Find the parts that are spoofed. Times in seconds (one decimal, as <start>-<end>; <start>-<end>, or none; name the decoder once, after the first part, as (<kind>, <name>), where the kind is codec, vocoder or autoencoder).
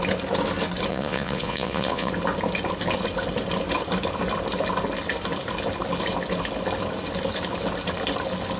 0.9-2.1 (vocoder, Vocos)